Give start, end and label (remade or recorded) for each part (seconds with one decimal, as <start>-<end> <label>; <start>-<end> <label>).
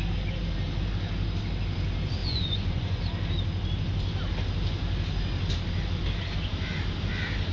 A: 0.0-2.2 recorded; 2.2-3.0 remade; 3.0-7.5 recorded